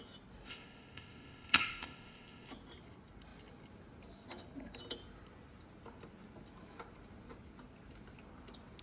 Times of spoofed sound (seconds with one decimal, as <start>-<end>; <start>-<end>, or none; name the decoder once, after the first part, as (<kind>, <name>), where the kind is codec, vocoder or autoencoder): 0.5-2.5 (codec, ZipCodec)